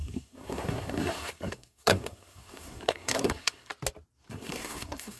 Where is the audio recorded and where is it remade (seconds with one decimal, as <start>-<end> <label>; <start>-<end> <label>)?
0.0-3.7 remade; 3.7-4.3 recorded; 4.3-5.2 remade